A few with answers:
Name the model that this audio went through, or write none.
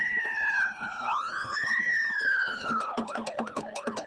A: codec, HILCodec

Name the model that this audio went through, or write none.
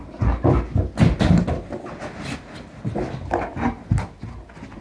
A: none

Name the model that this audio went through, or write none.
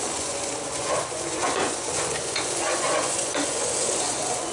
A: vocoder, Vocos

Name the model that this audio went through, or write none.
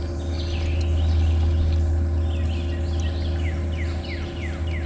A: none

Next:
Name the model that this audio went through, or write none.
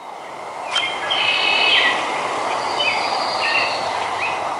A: none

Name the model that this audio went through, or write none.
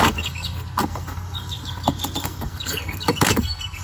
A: codec, SNAC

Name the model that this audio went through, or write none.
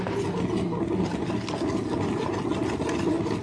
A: none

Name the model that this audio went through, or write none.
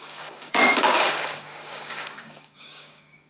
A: codec, DAC